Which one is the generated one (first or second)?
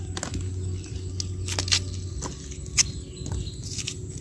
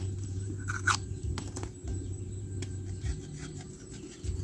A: second